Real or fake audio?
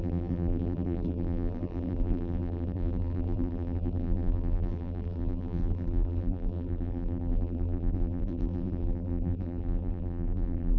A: fake